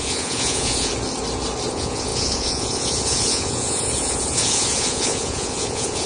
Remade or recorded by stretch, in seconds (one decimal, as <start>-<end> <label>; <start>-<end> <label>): 0.0-0.9 remade; 0.9-1.7 recorded; 1.7-6.1 remade